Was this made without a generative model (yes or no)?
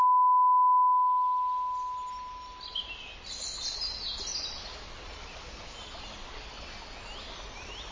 yes